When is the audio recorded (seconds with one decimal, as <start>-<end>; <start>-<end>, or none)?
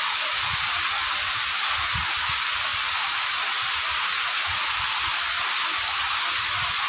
0.0-6.9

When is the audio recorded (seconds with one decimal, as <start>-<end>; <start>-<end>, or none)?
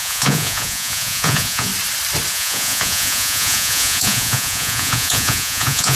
1.7-2.3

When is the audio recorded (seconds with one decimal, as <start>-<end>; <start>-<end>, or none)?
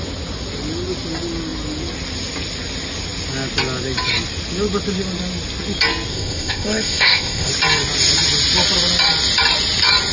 0.0-6.1; 7.5-10.1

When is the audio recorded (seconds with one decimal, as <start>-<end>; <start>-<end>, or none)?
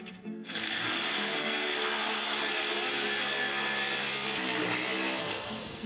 1.7-5.2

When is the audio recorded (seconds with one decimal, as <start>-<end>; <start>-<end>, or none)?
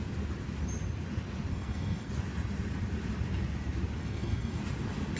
0.0-1.5; 2.1-4.0; 4.6-5.2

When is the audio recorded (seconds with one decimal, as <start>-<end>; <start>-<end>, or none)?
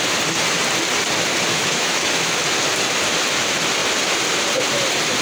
0.0-1.5; 2.4-5.2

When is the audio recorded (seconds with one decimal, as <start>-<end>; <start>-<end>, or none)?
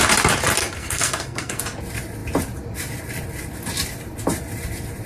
0.0-0.6; 1.6-5.1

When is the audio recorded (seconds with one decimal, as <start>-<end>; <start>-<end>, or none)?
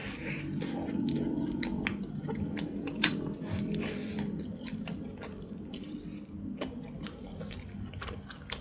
0.0-1.9; 6.0-8.6